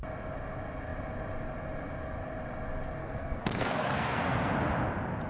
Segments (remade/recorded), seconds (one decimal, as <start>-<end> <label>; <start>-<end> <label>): 0.0-3.0 recorded; 3.0-4.5 remade; 4.5-5.3 recorded